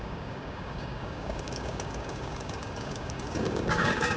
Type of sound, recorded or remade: remade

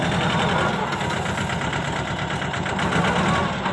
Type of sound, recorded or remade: recorded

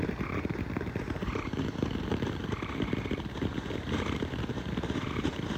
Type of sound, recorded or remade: remade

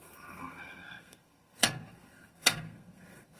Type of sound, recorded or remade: remade